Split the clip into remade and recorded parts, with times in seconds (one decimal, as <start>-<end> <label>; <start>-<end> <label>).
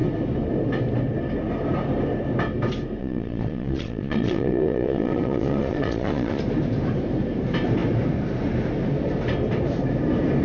0.0-3.0 recorded; 3.0-6.4 remade; 6.4-10.4 recorded